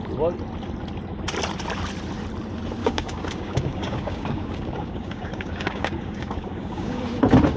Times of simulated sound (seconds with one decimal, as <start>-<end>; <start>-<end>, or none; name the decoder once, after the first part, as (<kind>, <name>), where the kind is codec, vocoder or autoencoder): 2.8-7.0 (codec, DAC)